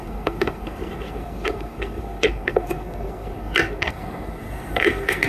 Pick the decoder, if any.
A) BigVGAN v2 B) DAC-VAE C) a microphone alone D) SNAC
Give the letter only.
D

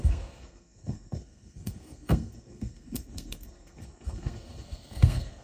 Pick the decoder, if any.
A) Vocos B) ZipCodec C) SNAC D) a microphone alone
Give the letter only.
C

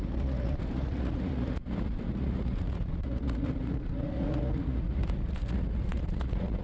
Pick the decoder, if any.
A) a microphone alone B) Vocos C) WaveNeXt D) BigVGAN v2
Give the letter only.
B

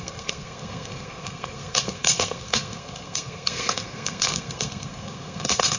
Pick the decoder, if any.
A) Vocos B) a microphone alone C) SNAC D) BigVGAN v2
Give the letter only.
C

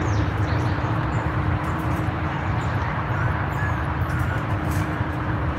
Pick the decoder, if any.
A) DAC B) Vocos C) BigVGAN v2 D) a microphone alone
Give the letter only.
C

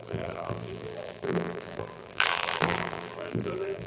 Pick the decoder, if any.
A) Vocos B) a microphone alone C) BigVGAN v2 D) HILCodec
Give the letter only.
C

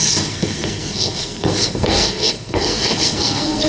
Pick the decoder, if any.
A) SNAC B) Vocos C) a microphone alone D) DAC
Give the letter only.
A